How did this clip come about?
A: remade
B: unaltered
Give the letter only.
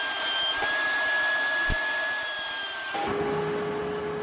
B